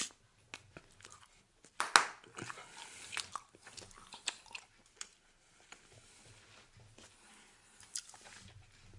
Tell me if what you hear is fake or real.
real